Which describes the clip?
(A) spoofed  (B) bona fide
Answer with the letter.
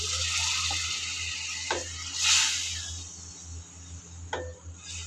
B